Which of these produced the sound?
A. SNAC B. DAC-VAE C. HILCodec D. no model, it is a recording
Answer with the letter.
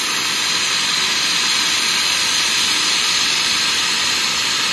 D